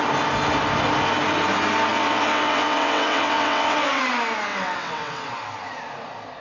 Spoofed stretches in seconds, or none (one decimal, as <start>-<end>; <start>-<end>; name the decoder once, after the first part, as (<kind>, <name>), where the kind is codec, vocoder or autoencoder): 1.9-4.0 (vocoder, WaveNeXt); 4.5-5.3